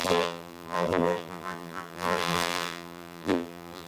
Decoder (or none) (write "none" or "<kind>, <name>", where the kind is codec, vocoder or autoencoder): vocoder, BigVGAN v2